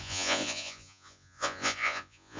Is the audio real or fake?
fake